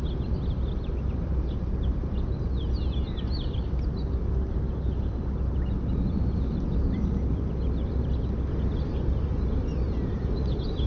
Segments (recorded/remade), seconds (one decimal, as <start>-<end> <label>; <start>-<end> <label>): 0.0-10.9 recorded

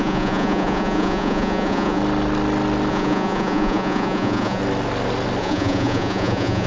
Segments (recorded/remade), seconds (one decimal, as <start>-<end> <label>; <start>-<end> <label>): 0.0-2.0 remade; 2.0-2.9 recorded; 2.9-4.6 remade; 4.6-5.4 recorded; 5.4-6.7 remade